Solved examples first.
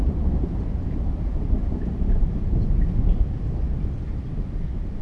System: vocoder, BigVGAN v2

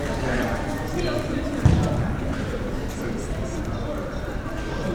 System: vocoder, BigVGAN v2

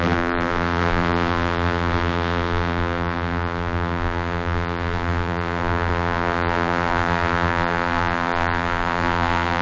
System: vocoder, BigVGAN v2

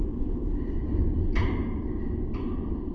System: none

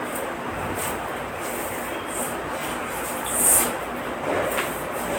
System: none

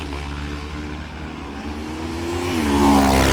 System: none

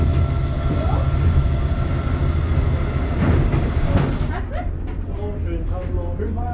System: none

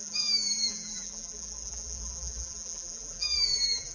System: vocoder, BigVGAN v2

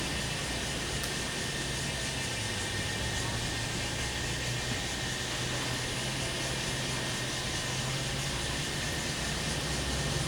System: none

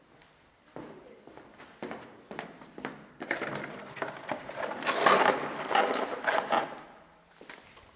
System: vocoder, BigVGAN v2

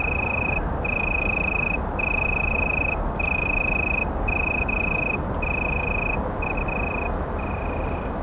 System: vocoder, BigVGAN v2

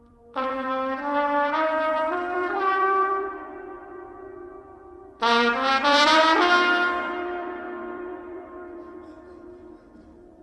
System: vocoder, BigVGAN v2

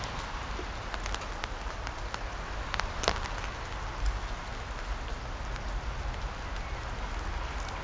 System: none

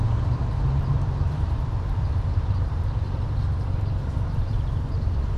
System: vocoder, BigVGAN v2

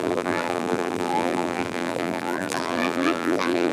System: vocoder, BigVGAN v2